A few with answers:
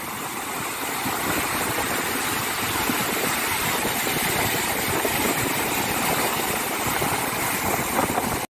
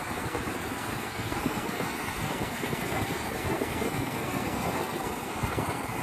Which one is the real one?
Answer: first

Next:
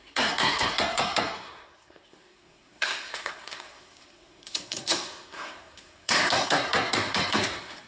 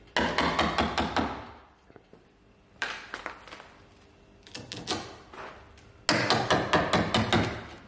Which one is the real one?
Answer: second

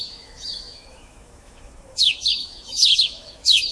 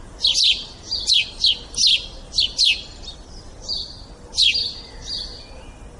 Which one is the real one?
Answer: second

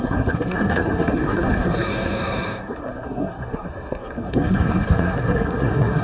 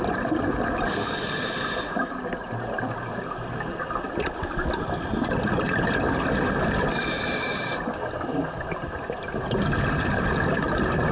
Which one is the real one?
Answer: second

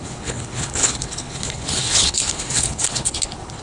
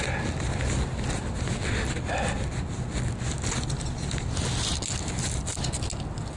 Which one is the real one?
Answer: second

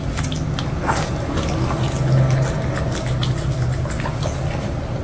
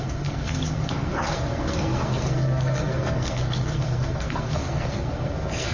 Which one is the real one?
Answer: first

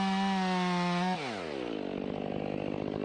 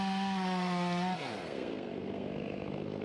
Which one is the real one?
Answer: first